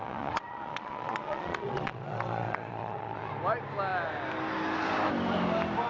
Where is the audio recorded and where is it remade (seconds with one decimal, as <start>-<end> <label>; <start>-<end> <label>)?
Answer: 0.0-3.3 remade; 3.3-5.9 recorded